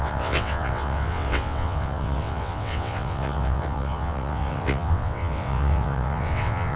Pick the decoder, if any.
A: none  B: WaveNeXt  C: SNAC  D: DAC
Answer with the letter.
B